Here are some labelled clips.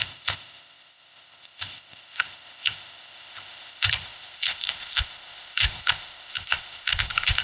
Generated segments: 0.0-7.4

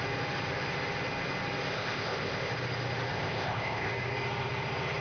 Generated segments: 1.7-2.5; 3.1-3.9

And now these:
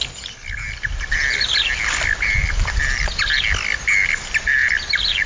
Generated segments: none

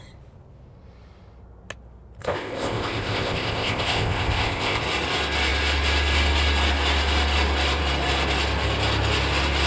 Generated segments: 2.2-4.8

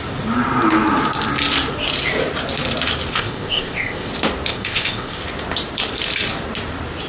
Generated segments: 3.1-4.1; 4.5-5.2

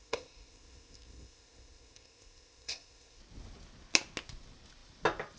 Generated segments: 0.0-3.2

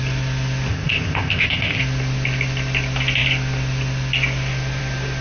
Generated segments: 0.7-1.8

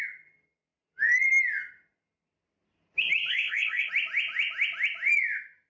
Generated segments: 3.3-3.9